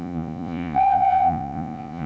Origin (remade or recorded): remade